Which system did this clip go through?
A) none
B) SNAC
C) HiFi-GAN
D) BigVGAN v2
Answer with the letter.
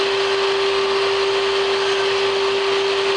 A